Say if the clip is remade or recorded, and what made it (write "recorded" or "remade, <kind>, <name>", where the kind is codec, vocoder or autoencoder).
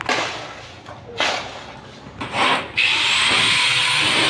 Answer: recorded